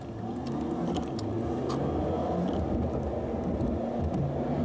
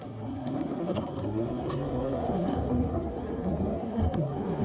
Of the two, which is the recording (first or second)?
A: first